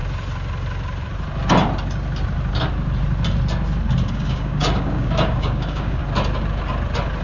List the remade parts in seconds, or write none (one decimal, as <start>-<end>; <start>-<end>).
4.1-6.0